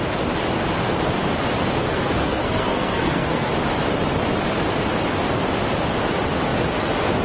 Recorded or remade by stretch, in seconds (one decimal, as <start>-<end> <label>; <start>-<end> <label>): 0.0-1.8 recorded; 1.8-3.5 remade; 3.5-7.2 recorded